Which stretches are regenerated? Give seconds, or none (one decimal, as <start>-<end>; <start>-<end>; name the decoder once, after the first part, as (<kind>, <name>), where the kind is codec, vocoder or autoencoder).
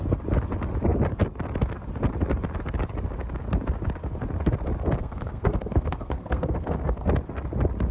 5.0-7.1 (codec, SNAC)